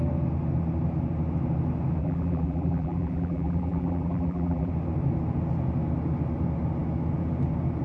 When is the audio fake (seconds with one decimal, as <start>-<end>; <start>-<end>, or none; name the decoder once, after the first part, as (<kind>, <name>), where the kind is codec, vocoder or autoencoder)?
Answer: 2.0-4.7 (vocoder, BigVGAN v2)